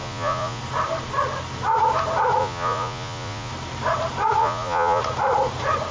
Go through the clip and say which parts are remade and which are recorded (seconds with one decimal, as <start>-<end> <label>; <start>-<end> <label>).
0.0-0.6 remade; 0.6-2.4 recorded; 2.4-3.5 remade; 3.5-4.4 recorded; 4.4-5.0 remade; 5.0-5.9 recorded